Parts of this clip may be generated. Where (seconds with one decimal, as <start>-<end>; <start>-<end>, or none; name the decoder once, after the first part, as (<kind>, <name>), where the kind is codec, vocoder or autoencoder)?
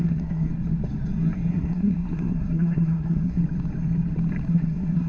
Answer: 0.0-0.5 (codec, SNAC); 1.5-3.4; 4.5-5.1